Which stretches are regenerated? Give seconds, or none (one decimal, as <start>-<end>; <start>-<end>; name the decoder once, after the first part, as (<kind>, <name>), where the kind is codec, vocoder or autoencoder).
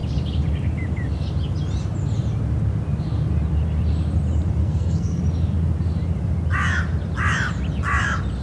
4.6-5.2 (codec, SNAC)